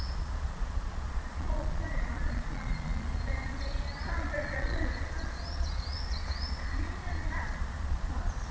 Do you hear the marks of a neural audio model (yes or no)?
yes